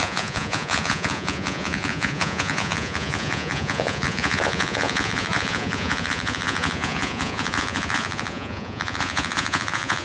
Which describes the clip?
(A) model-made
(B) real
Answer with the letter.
A